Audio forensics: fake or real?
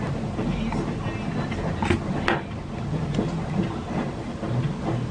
real